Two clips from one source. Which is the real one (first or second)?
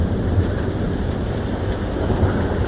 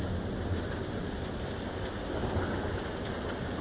second